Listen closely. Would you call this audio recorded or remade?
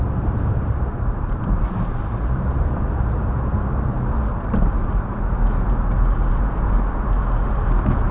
remade